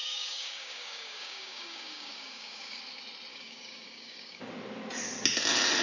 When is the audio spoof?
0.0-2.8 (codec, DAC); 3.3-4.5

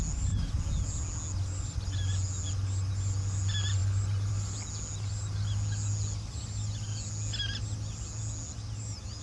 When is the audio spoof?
none

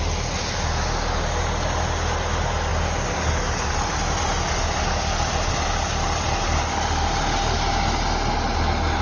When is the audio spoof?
none

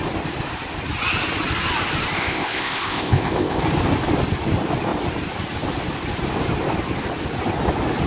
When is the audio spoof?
2.2-3.6 (codec, ZipCodec)

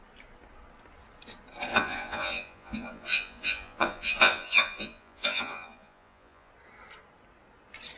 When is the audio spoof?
1.7-6.5 (vocoder, Vocos)